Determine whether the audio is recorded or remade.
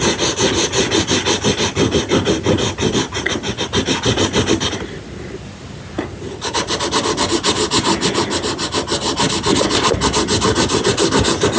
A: recorded